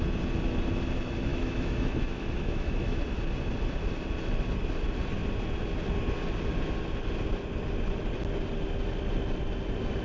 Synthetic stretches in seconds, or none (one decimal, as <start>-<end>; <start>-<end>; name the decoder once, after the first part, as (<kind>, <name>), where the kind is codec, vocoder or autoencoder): 1.3-3.0 (autoencoder, DAC-VAE)